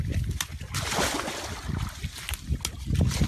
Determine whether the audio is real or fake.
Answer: real